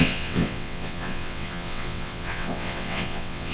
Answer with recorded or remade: remade